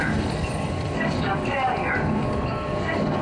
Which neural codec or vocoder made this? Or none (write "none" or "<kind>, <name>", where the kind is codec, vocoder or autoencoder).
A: codec, DAC